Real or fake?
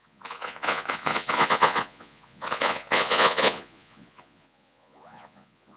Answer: fake